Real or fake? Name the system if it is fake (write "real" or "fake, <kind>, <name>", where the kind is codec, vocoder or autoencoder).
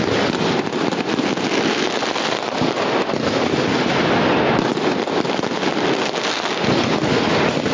real